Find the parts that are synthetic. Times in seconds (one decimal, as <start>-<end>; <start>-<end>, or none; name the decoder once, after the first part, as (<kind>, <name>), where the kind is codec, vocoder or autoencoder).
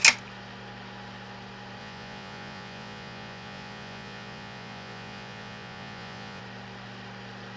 1.8-6.4 (vocoder, Vocos)